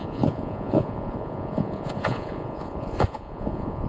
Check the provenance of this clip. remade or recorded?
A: remade